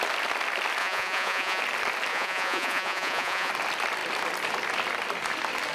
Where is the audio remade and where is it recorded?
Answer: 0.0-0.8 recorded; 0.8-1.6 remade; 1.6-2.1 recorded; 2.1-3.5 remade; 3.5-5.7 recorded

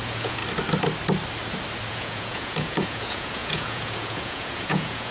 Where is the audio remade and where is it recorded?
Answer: 0.0-0.4 remade; 0.4-1.9 recorded; 1.9-5.1 remade

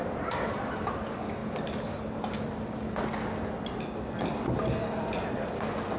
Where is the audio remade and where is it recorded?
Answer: 0.0-6.0 recorded

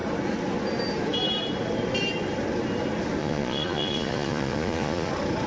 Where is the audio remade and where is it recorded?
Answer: 0.0-3.2 recorded; 3.2-5.1 remade; 5.1-5.5 recorded

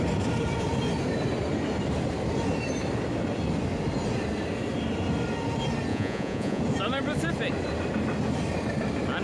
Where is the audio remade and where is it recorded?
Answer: 0.0-5.9 recorded; 5.9-6.6 remade; 6.6-9.2 recorded